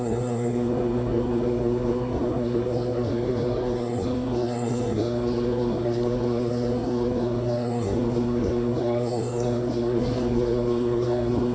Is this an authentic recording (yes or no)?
no